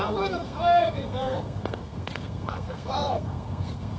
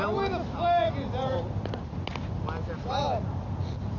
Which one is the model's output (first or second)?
first